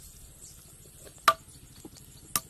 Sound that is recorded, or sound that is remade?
recorded